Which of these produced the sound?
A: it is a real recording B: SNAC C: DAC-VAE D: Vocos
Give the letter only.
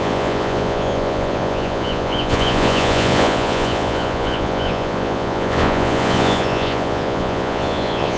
D